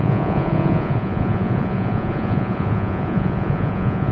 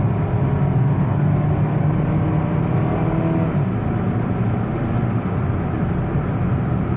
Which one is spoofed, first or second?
first